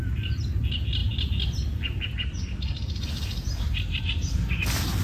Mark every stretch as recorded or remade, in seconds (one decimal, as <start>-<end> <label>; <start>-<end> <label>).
0.0-5.0 recorded